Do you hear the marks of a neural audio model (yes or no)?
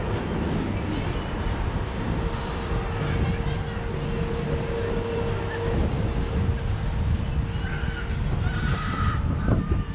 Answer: no